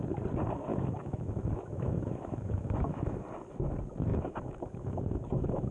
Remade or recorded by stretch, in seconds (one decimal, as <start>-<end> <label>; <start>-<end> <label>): 0.0-0.7 recorded; 0.7-3.2 remade; 3.2-4.1 recorded; 4.1-5.7 remade